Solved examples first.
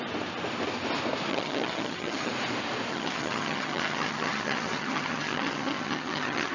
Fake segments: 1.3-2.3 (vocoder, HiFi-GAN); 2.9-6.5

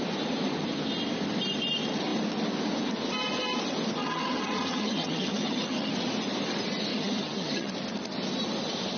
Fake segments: 4.0-5.9 (vocoder, HiFi-GAN); 6.9-7.7

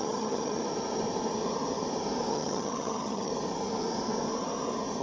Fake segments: 0.0-0.6 (vocoder, HiFi-GAN); 2.3-3.3

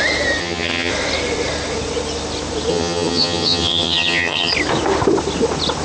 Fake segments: 0.4-0.9 (vocoder, HiFi-GAN); 2.7-4.5

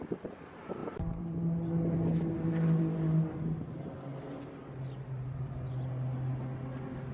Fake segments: none

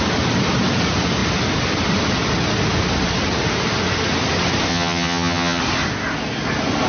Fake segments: 4.7-5.6 (vocoder, HiFi-GAN)

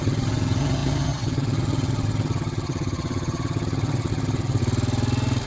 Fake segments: 0.0-4.6 (vocoder, HiFi-GAN)